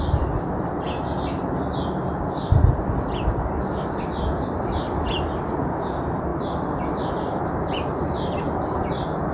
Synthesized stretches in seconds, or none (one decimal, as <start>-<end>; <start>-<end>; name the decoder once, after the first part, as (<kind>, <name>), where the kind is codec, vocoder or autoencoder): none